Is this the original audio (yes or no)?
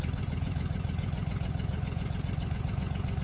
no